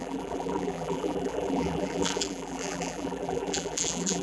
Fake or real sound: fake